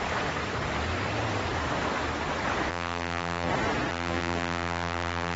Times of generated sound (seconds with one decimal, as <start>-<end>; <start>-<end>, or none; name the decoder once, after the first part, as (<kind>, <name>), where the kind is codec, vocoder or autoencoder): 2.7-3.5 (vocoder, BigVGAN v2); 3.9-5.4